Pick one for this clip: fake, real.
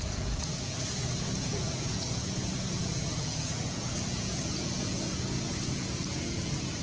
fake